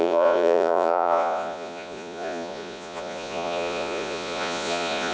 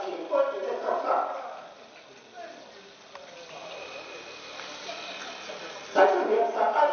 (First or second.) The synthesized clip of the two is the first